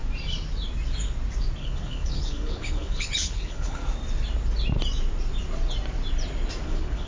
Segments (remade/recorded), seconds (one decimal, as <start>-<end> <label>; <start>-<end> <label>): 0.0-1.6 recorded; 1.6-3.8 remade; 3.8-6.6 recorded; 6.6-7.1 remade